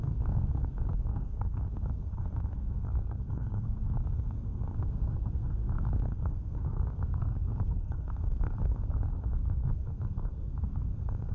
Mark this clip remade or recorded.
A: remade